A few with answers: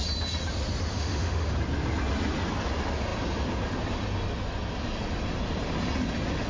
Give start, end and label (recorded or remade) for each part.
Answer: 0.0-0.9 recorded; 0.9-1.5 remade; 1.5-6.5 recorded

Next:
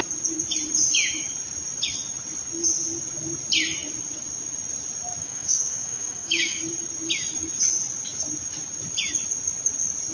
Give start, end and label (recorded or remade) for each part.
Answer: 0.0-5.2 recorded; 5.2-6.6 remade; 6.6-10.1 recorded